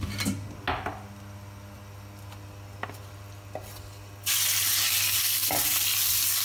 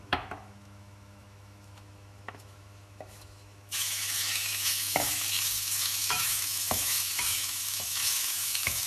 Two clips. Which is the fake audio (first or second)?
second